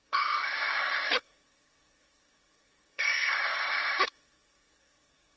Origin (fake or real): fake